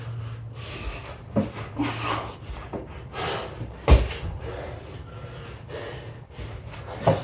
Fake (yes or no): no